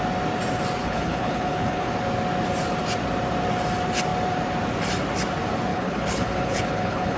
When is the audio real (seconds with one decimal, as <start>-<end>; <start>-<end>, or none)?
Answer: 0.0-0.8; 1.9-5.7